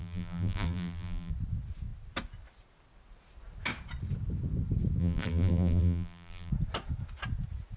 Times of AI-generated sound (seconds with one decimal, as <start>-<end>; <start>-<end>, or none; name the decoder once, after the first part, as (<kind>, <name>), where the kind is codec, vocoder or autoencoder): 0.0-1.3 (vocoder, BigVGAN v2); 5.0-6.5